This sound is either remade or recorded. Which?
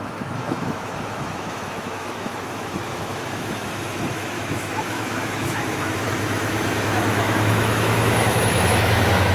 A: remade